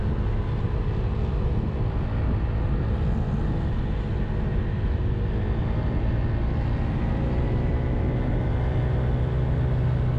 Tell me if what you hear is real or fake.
real